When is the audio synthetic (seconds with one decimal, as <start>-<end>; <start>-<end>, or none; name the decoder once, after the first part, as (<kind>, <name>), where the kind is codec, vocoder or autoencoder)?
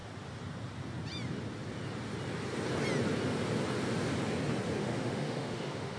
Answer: 4.8-6.0 (autoencoder, DAC-VAE)